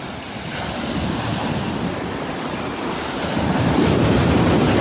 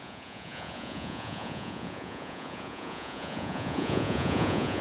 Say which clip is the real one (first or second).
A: first